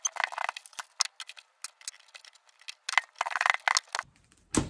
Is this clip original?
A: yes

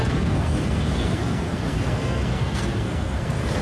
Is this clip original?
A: no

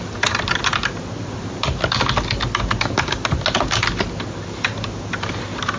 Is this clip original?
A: yes